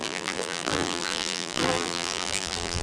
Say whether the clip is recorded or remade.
remade